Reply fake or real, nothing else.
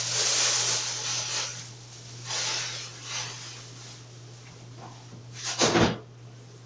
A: real